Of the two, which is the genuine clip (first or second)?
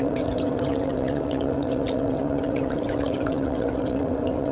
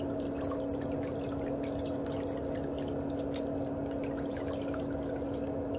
second